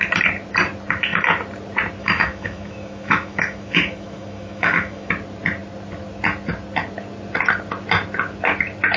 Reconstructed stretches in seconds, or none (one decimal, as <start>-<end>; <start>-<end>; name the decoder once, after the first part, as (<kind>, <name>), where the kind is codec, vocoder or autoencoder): 2.0-5.1 (autoencoder, DAC-VAE)